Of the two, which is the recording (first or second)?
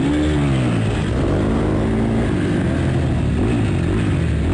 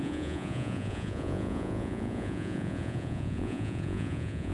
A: first